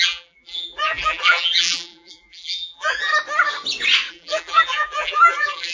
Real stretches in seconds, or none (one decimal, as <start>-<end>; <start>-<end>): 3.1-4.1